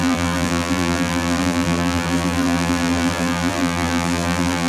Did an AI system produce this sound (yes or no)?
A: yes